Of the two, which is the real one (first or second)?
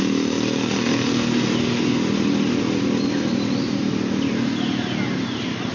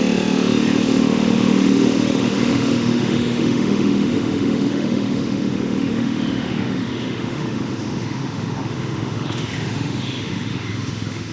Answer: first